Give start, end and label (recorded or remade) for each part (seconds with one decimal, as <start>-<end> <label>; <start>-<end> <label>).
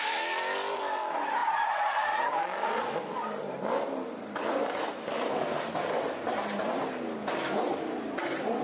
0.0-8.6 recorded